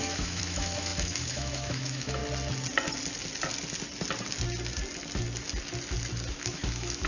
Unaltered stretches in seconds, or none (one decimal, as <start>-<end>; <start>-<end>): 2.2-6.3